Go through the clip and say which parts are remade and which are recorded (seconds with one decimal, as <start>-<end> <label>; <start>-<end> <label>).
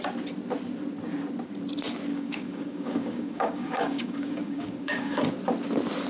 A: 0.0-2.1 recorded; 2.1-5.2 remade; 5.2-6.1 recorded